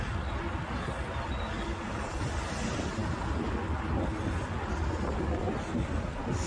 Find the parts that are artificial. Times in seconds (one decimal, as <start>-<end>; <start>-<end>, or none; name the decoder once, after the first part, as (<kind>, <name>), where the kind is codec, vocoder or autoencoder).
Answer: none